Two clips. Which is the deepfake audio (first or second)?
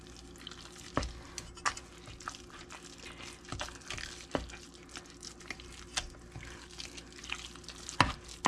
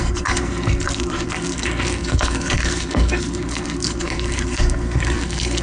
second